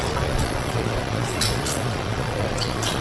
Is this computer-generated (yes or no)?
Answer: yes